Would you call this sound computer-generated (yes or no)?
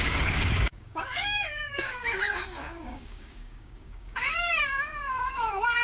yes